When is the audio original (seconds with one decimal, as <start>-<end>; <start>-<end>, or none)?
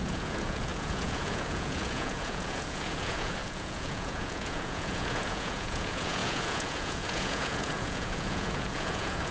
none